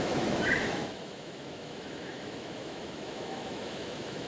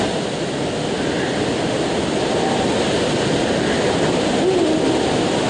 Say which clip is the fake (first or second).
first